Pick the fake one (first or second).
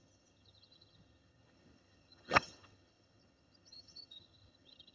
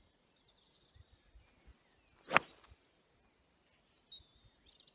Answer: first